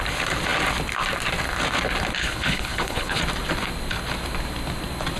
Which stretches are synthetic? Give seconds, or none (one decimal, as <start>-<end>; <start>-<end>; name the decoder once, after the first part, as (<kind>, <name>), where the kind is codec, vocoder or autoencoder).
2.2-3.2 (codec, HILCodec)